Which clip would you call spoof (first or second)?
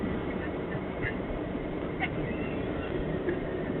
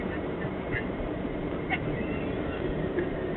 first